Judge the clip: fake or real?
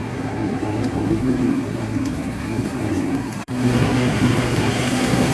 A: fake